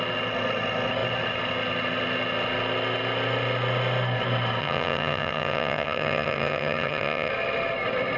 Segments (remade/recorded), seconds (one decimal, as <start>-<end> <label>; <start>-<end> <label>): 0.0-4.6 recorded; 4.6-7.3 remade; 7.3-8.2 recorded